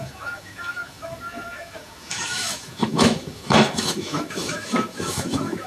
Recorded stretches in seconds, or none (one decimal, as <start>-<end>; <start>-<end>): none